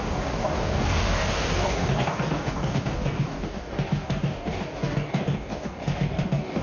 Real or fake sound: fake